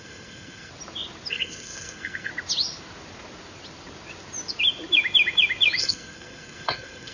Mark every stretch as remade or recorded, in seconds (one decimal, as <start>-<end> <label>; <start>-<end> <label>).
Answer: 0.0-0.7 remade; 0.7-1.3 recorded; 1.3-2.3 remade; 2.3-5.8 recorded; 5.8-7.1 remade